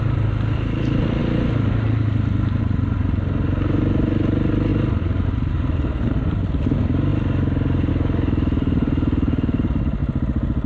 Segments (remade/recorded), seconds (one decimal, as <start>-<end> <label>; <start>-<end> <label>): 0.0-10.7 recorded